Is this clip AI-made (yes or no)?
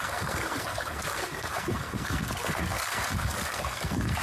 yes